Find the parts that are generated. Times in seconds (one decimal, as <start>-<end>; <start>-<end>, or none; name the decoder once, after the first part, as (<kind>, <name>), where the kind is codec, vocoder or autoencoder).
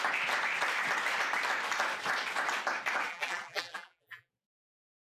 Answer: 3.1-4.3 (vocoder, BigVGAN v2)